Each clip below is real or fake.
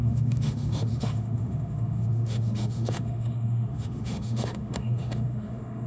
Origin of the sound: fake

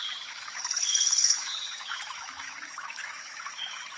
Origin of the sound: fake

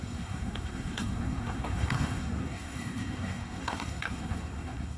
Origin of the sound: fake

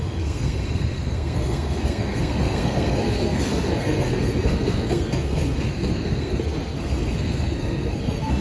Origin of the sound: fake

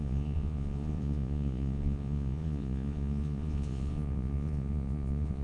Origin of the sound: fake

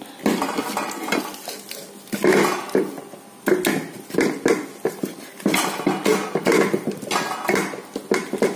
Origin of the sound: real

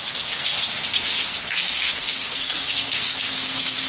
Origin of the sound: fake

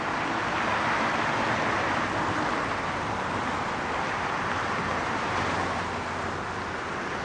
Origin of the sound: real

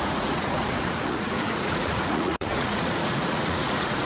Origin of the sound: fake